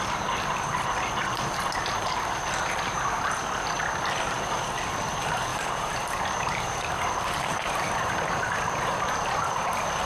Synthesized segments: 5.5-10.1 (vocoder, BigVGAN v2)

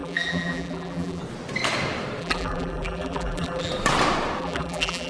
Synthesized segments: 0.0-1.2 (vocoder, BigVGAN v2); 2.2-3.7; 4.4-5.1

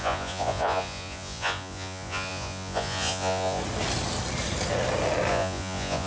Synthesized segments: 0.0-3.6 (vocoder, Vocos); 5.3-6.1

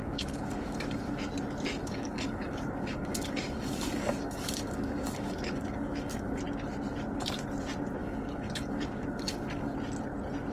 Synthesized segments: 0.0-1.2 (codec, DAC); 1.8-6.4; 8.0-9.7